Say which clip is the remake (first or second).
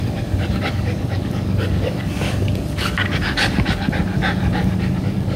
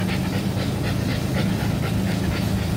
first